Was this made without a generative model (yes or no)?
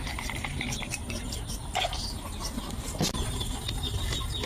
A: yes